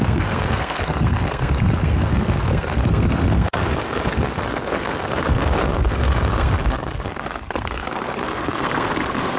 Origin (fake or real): fake